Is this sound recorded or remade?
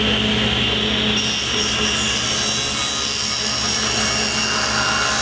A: recorded